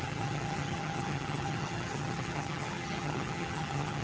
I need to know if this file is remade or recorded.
remade